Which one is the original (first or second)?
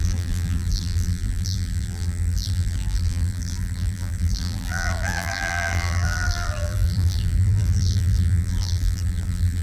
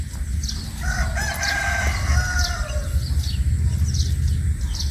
second